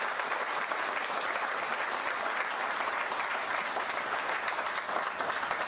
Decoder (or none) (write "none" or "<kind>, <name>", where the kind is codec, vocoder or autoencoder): none